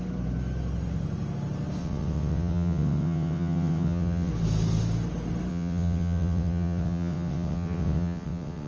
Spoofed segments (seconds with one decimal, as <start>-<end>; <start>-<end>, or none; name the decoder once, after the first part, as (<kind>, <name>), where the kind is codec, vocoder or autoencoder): 1.8-4.3 (vocoder, WaveNeXt); 5.5-8.7